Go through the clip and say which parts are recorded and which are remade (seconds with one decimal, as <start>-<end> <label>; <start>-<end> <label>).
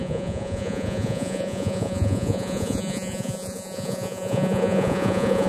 0.0-5.5 remade